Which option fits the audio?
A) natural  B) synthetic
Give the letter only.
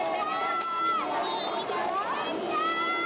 A